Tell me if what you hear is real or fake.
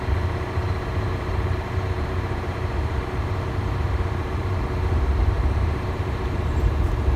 fake